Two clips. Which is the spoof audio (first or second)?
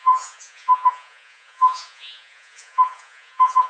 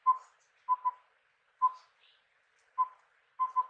first